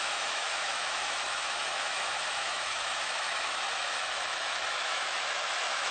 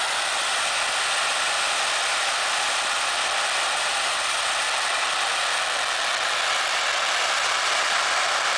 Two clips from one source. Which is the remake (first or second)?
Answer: first